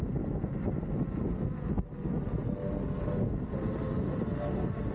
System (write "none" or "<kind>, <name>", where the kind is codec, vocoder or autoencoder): none